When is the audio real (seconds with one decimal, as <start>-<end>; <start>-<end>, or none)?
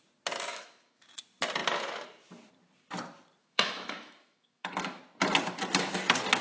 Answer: 0.0-0.5; 1.0-3.4; 5.0-6.4